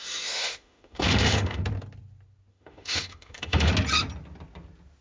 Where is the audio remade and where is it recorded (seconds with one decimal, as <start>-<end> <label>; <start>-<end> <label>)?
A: 0.0-1.6 remade; 1.6-2.5 recorded; 2.5-3.7 remade; 3.7-5.0 recorded